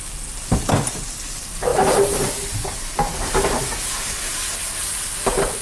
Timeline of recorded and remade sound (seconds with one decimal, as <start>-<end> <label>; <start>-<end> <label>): 0.0-5.6 recorded